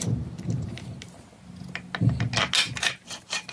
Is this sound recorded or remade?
recorded